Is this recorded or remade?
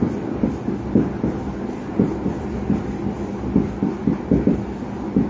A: recorded